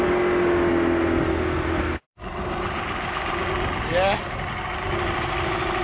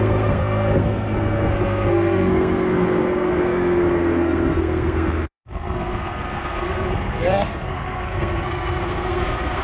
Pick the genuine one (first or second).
first